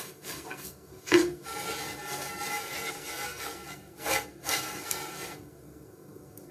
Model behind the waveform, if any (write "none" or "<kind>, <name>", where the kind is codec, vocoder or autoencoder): codec, SNAC